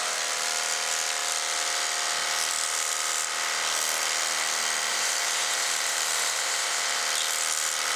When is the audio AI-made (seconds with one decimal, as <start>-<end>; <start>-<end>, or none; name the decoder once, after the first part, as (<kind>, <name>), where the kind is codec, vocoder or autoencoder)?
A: 4.9-7.0 (vocoder, BigVGAN v2)